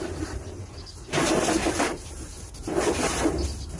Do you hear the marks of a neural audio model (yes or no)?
no